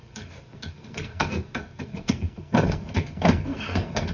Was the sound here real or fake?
fake